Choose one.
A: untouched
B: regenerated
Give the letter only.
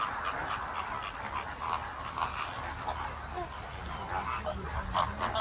A